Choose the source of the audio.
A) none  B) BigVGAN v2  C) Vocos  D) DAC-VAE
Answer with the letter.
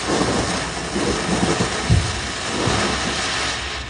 A